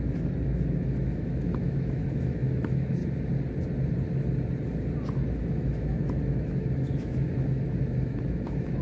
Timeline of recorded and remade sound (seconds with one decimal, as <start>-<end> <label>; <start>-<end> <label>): 0.0-3.0 remade; 3.0-5.3 recorded; 5.3-8.8 remade